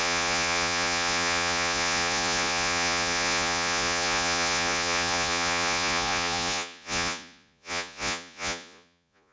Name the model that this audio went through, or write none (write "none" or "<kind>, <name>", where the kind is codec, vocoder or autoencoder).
vocoder, Vocos